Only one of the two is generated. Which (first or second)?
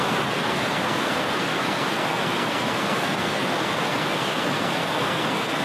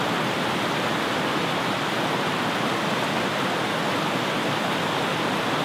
first